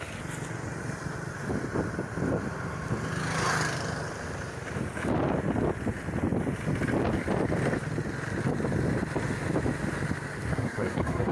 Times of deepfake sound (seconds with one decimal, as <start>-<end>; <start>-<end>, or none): 10.5-11.3